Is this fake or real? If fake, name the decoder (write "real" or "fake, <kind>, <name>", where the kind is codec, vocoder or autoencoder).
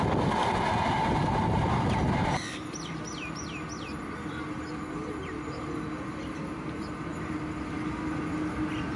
real